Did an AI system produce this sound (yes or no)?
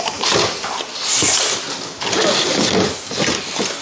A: no